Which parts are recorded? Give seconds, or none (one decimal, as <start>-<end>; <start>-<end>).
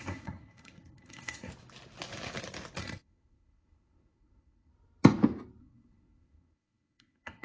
1.5-2.8; 4.7-5.6